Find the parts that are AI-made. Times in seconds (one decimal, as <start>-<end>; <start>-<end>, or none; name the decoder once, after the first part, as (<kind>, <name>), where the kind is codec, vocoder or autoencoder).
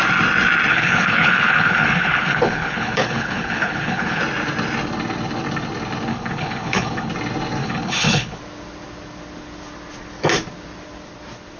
0.7-4.2 (codec, HILCodec); 6.1-7.1; 7.6-8.4